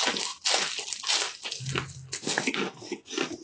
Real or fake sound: real